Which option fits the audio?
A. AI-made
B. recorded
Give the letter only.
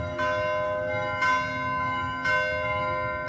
B